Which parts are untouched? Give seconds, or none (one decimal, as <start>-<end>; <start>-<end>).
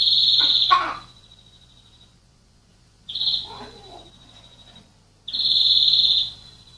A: 4.9-5.6